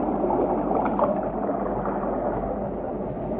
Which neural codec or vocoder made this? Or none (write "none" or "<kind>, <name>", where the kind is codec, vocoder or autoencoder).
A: none